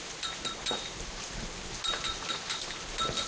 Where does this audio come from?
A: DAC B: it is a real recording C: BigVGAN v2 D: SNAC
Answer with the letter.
B